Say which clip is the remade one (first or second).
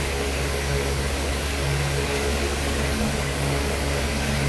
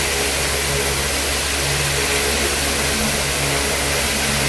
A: first